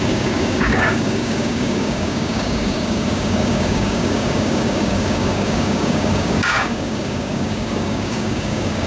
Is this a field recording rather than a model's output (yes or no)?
no